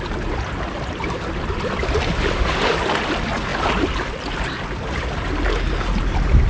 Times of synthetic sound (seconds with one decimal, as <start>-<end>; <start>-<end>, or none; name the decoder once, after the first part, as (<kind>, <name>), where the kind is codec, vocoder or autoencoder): none